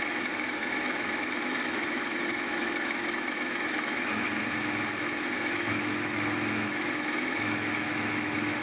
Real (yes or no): no